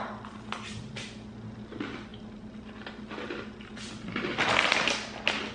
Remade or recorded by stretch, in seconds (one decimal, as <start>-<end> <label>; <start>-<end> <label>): 0.0-5.5 recorded